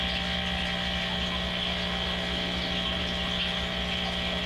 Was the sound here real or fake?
real